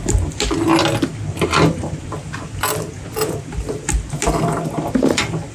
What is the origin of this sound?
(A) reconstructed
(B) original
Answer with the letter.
B